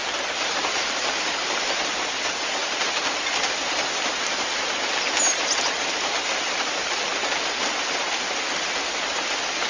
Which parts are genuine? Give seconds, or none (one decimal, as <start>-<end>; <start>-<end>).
0.0-9.7